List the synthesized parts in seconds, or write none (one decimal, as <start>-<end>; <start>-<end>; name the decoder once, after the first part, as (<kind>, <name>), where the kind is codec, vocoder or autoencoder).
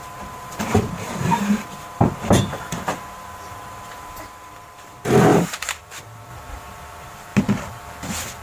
0.0-7.3 (vocoder, BigVGAN v2)